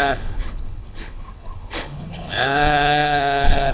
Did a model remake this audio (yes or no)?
yes